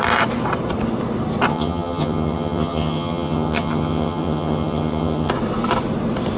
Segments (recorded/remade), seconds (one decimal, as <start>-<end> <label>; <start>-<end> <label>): 0.0-1.5 recorded; 1.5-5.3 remade; 5.3-6.4 recorded